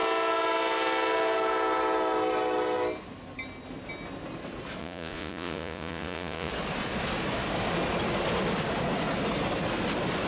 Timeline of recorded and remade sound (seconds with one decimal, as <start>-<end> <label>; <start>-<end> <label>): 0.0-4.8 recorded; 4.8-6.5 remade; 6.5-10.3 recorded

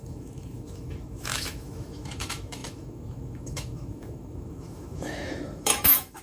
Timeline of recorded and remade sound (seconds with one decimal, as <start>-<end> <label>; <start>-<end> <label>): 0.0-6.2 remade

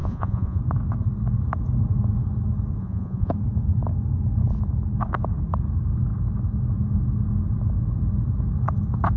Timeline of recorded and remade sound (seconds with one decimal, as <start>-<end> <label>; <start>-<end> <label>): 0.0-0.6 remade; 0.6-2.8 recorded; 2.8-3.3 remade; 3.3-9.2 recorded

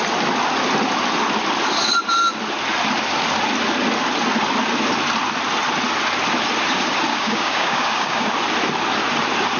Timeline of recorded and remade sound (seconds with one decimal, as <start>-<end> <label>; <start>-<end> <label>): 0.0-7.1 recorded; 7.1-8.3 remade; 8.3-9.6 recorded